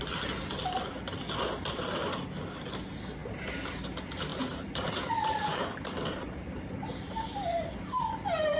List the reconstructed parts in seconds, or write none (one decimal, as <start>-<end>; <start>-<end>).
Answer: 4.3-6.7